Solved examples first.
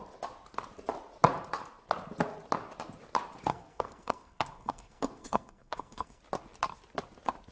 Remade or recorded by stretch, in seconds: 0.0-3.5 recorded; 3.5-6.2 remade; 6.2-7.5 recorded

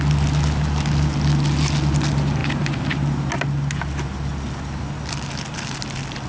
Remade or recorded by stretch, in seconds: 0.0-6.3 recorded

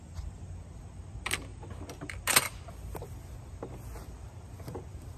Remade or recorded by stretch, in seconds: 0.0-5.2 recorded

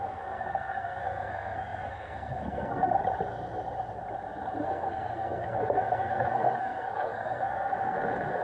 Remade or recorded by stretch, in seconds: 0.0-3.0 remade; 3.0-4.6 recorded; 4.6-8.4 remade

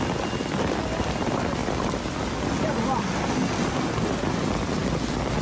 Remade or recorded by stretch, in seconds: 0.0-5.4 recorded

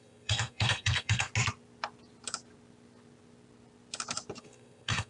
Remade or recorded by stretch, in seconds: 0.0-1.3 remade; 1.3-4.4 recorded; 4.4-5.1 remade

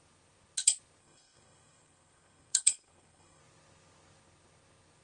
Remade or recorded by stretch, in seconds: 0.0-1.0 recorded; 1.0-3.4 remade; 3.4-5.0 recorded

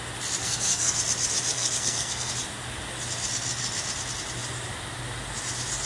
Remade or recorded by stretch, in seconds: 0.0-0.4 recorded; 0.4-1.0 remade; 1.0-1.5 recorded; 1.5-2.3 remade; 2.3-5.9 recorded